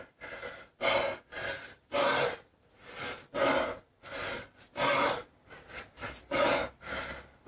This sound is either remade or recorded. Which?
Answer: recorded